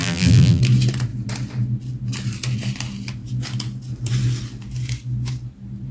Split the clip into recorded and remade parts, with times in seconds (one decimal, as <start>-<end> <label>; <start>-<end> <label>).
0.0-0.6 remade; 0.6-5.9 recorded